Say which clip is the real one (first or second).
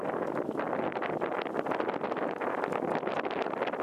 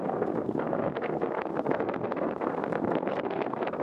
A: first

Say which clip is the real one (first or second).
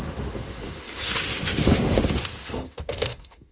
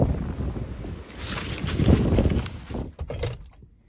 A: second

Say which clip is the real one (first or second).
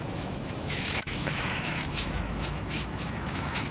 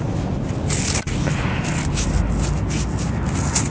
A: second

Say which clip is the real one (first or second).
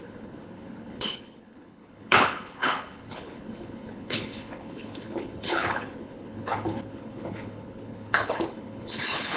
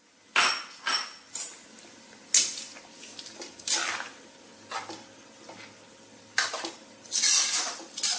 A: second